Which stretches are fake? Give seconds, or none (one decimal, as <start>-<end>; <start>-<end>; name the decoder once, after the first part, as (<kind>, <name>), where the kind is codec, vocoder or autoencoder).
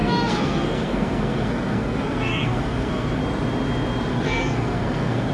0.0-3.2 (codec, SNAC); 4.1-5.3